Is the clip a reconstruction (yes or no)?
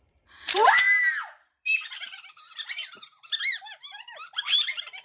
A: yes